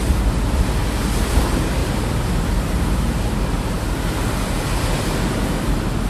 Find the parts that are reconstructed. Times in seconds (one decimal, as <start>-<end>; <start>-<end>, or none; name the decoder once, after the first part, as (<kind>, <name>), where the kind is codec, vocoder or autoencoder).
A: 1.8-5.5 (vocoder, BigVGAN v2)